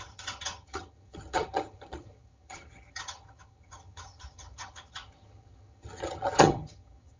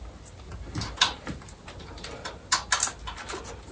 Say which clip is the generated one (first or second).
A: first